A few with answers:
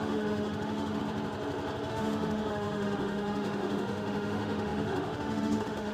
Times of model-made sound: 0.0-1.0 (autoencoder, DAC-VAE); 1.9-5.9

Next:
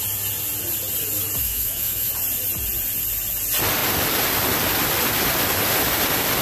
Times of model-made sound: 1.4-2.1 (autoencoder, DAC-VAE)

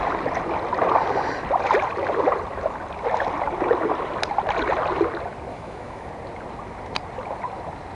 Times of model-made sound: 5.5-6.1 (autoencoder, DAC-VAE)

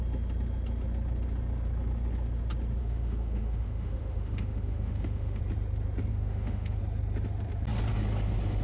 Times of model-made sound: 2.8-5.4 (autoencoder, DAC-VAE); 6.1-6.8